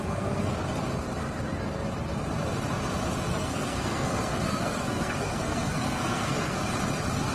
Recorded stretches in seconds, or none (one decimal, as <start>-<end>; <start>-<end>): 0.5-3.3; 6.6-7.3